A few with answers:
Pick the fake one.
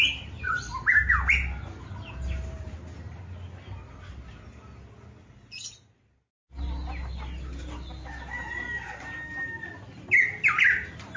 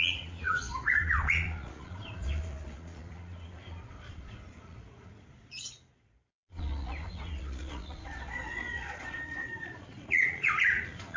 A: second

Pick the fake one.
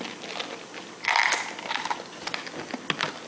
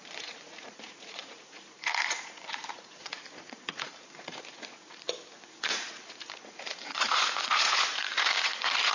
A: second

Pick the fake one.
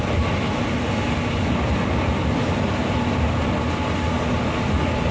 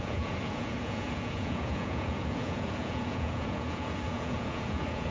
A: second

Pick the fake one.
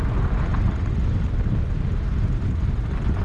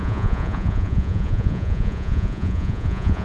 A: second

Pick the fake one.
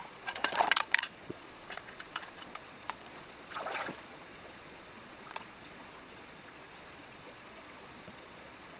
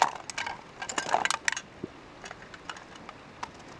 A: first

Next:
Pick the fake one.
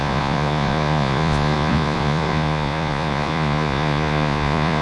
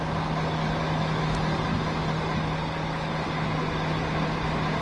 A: first